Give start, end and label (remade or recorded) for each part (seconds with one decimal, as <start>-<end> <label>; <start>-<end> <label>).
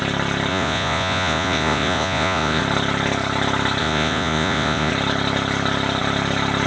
0.0-0.5 recorded; 0.5-2.6 remade; 2.6-3.8 recorded; 3.8-4.9 remade; 4.9-6.7 recorded